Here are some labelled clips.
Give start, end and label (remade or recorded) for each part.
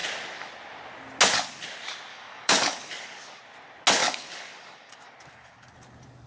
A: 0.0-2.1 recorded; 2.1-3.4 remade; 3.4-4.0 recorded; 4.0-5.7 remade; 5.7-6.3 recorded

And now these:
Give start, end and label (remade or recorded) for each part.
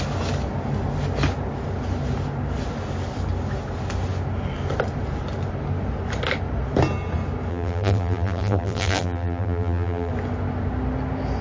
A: 0.0-7.5 recorded; 7.5-10.1 remade; 10.1-11.4 recorded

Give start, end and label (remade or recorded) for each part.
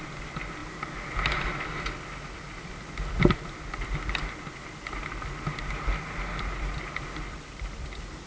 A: 0.0-8.3 recorded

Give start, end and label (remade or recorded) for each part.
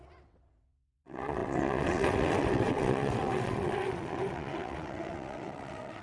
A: 0.0-6.0 remade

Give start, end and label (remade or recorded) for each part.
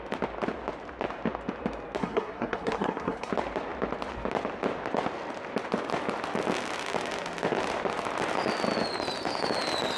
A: 0.0-2.0 recorded; 2.0-3.3 remade; 3.3-10.0 recorded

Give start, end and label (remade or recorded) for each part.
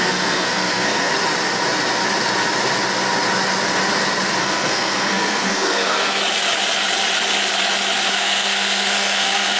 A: 0.0-1.1 remade; 1.1-4.4 recorded; 4.4-6.2 remade; 6.2-8.1 recorded; 8.1-9.6 remade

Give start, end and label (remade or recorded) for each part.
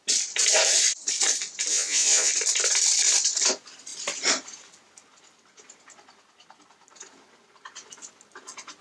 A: 0.0-1.7 recorded; 1.7-2.3 remade; 2.3-8.8 recorded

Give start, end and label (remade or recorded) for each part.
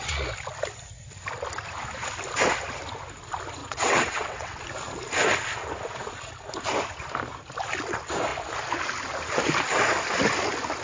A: 0.0-3.6 recorded; 3.6-4.6 remade; 4.6-10.8 recorded